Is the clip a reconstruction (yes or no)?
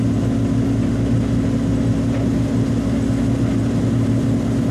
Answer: no